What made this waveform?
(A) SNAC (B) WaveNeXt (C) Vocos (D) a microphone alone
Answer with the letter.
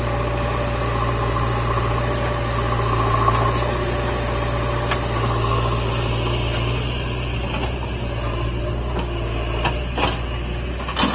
D